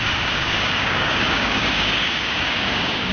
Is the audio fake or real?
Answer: fake